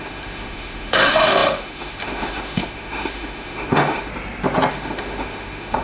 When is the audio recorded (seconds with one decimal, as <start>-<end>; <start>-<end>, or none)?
4.1-4.7